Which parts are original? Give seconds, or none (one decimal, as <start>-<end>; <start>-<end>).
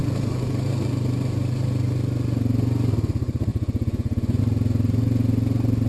0.0-3.5; 4.4-5.9